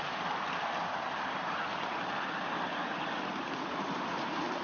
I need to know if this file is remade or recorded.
recorded